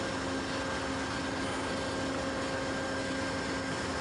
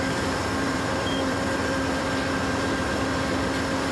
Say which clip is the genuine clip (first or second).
first